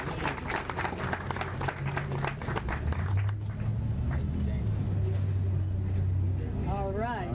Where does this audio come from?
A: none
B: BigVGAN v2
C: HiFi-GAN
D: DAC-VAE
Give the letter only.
A